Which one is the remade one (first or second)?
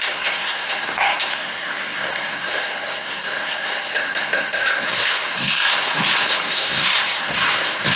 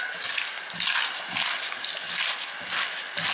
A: first